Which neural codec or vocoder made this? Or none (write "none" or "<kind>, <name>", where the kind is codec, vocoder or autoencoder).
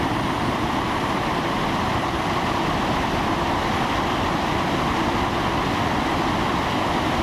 none